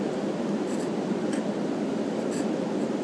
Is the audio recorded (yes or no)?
yes